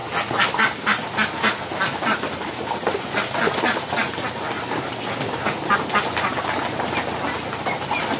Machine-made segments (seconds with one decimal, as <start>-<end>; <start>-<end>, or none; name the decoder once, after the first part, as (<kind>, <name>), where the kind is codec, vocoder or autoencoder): none